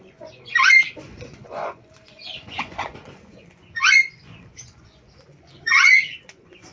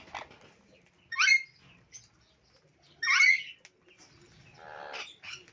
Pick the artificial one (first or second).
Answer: first